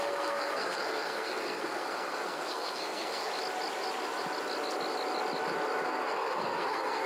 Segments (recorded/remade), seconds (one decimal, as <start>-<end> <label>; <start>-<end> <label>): 0.0-3.3 remade; 3.3-5.8 recorded; 5.8-7.1 remade